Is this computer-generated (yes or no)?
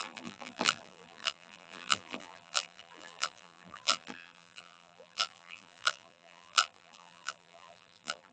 yes